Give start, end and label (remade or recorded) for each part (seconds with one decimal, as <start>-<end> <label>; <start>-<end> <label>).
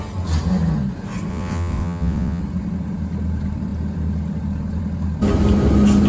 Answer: 0.0-1.3 recorded; 1.3-2.4 remade; 2.4-6.1 recorded